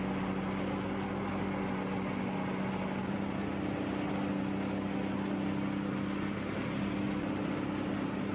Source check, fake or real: real